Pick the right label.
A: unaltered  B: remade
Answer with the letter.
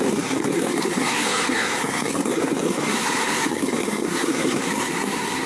B